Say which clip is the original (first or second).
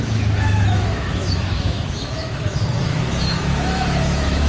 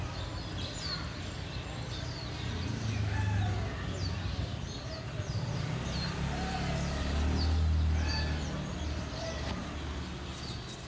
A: second